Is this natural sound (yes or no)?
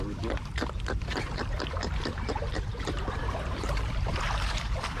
no